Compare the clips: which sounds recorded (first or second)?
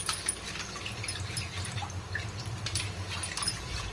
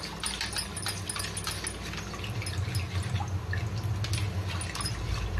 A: second